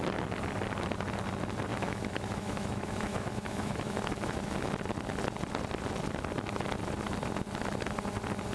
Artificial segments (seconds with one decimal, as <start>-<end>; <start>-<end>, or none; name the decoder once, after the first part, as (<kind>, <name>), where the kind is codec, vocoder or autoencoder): 1.7-4.7 (autoencoder, DAC-VAE)